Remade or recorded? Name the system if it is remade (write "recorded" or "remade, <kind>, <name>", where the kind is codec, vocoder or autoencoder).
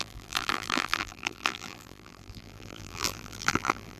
remade, vocoder, BigVGAN v2